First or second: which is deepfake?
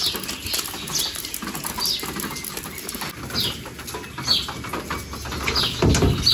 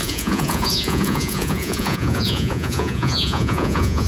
second